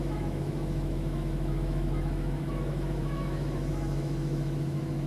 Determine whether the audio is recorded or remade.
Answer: remade